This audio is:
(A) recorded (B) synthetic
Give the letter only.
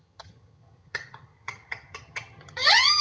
B